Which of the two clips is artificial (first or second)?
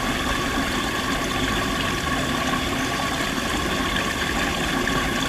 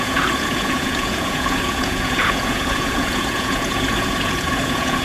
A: second